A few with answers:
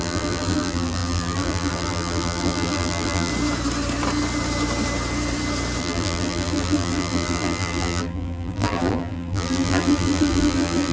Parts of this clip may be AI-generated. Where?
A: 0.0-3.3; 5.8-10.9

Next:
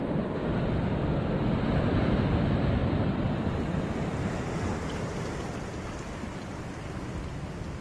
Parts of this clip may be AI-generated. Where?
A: 2.8-4.7

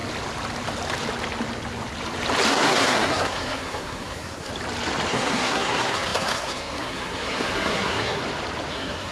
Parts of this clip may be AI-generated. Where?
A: 2.5-4.5; 5.1-8.2; 8.7-9.1

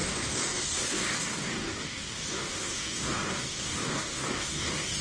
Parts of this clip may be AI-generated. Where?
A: 0.0-5.0

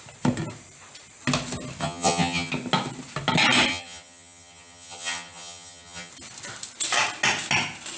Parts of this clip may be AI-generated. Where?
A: 1.8-2.5; 3.7-6.1

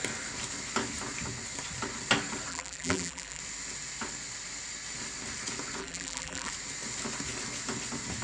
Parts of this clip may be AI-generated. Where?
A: 2.5-3.4; 5.8-6.5

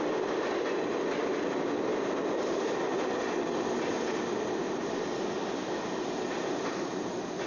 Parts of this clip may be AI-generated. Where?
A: none

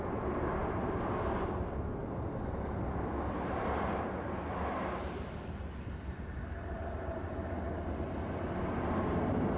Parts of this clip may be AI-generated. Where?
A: none